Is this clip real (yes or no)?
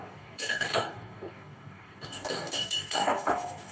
no